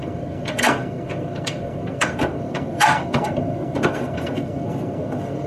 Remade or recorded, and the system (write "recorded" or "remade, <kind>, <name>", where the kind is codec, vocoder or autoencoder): remade, codec, SNAC